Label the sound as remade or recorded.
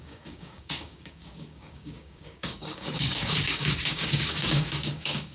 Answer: remade